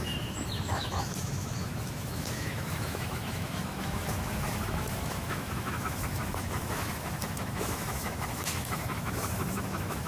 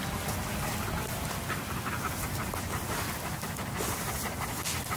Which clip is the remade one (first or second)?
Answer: first